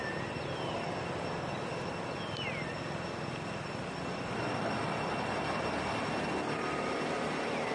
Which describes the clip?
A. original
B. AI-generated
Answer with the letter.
A